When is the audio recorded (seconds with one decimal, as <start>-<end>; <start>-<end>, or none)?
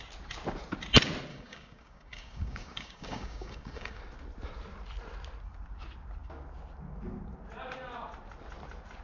0.0-1.3; 4.0-9.0